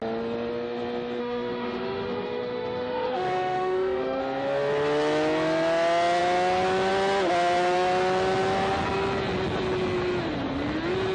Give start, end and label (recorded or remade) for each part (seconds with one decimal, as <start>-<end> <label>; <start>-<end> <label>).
0.0-1.2 recorded; 1.2-4.2 remade; 4.2-11.1 recorded